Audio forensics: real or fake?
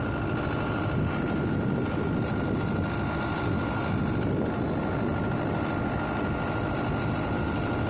real